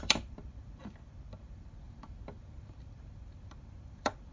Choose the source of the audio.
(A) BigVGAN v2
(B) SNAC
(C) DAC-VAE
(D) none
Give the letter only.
A